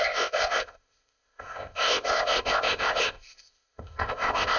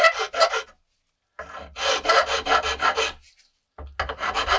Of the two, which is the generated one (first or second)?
first